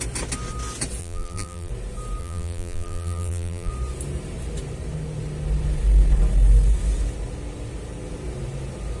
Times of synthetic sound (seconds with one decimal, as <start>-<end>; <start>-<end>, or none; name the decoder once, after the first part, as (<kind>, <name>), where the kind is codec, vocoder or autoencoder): 1.0-1.7 (vocoder, BigVGAN v2); 2.2-3.7